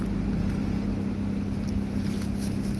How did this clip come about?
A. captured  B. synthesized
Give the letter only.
A